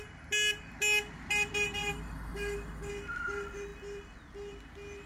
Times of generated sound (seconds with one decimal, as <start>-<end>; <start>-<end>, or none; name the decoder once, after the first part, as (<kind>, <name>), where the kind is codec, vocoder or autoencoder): 1.9-2.9 (autoencoder, DAC-VAE)